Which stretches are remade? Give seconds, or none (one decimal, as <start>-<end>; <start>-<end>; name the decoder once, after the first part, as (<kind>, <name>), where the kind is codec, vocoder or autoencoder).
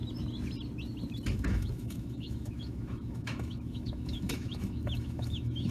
1.3-5.7 (autoencoder, DAC-VAE)